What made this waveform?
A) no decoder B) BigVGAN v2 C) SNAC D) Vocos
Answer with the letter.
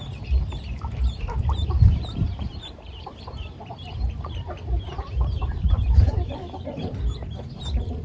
B